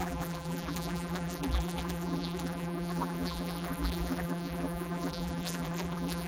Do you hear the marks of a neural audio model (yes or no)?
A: yes